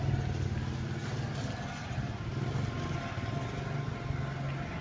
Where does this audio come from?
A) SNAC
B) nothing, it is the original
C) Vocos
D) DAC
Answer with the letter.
B